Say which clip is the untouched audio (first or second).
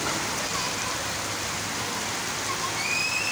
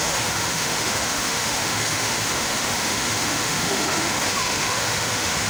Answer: first